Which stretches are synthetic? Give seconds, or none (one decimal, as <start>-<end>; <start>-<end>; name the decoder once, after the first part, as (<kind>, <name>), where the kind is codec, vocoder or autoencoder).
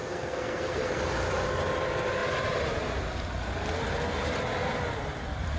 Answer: 0.0-1.0 (codec, SNAC)